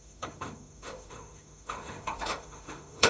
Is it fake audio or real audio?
fake